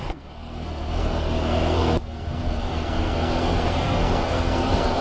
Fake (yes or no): yes